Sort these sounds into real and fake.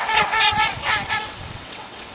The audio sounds fake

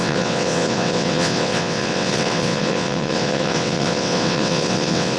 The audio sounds fake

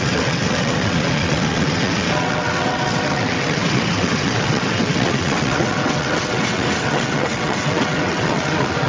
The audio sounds fake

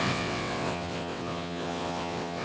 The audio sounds fake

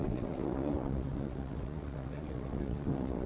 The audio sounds fake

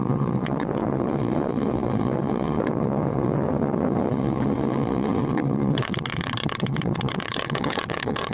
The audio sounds fake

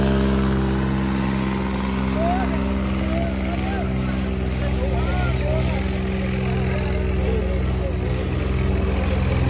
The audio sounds real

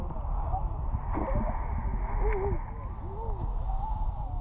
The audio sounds real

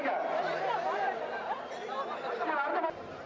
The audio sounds real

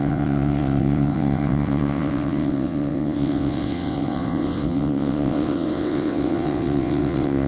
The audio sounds fake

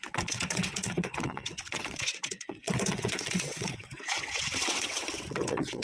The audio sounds fake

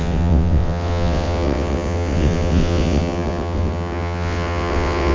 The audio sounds fake